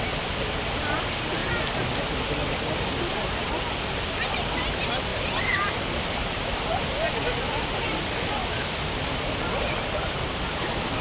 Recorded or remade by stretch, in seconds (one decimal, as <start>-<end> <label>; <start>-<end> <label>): 0.0-11.0 recorded